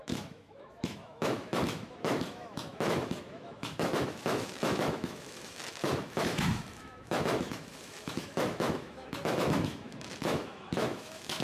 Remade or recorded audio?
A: remade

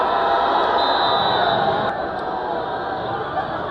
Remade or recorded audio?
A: recorded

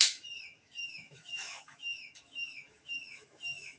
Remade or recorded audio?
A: remade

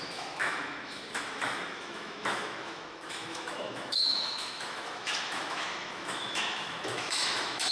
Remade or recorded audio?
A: remade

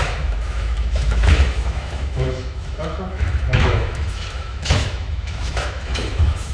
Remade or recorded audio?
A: remade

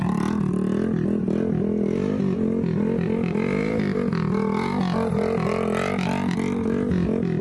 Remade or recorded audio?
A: recorded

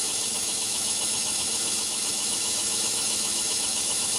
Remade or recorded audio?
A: remade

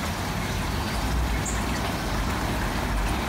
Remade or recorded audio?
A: recorded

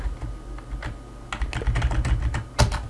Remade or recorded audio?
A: recorded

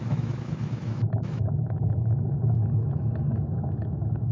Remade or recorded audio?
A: remade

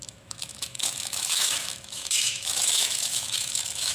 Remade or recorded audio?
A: remade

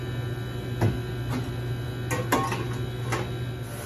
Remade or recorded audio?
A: recorded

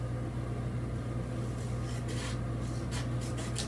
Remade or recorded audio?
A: recorded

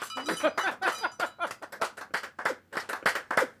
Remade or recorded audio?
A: recorded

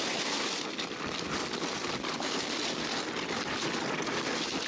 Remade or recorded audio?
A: recorded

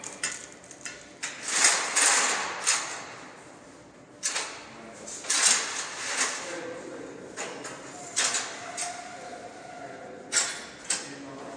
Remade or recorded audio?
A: recorded